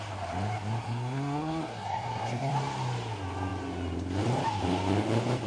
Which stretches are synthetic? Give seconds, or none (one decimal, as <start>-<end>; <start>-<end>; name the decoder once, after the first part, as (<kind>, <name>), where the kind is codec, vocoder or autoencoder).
0.8-2.5 (codec, SNAC)